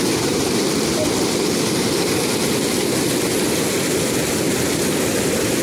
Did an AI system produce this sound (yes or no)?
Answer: no